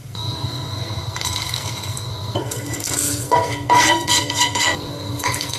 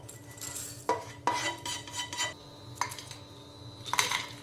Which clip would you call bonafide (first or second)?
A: second